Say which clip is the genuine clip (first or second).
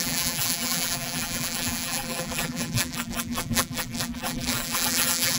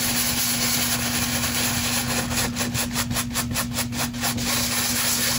second